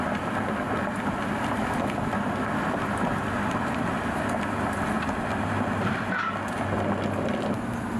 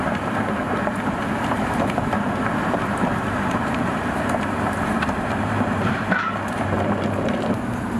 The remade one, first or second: second